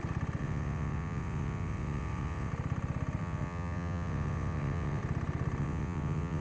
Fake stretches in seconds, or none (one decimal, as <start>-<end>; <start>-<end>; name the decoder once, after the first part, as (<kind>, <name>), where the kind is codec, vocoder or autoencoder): 0.4-2.5 (vocoder, WaveNeXt); 3.2-5.0; 5.6-6.4